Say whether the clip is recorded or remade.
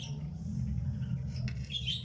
recorded